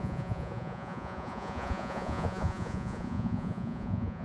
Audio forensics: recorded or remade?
remade